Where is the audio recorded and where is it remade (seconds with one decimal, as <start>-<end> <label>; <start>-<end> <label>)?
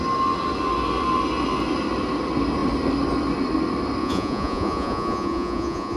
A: 0.0-4.0 recorded; 4.0-6.0 remade